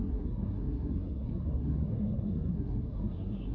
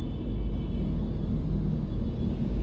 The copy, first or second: first